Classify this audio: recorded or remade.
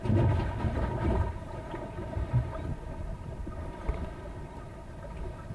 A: recorded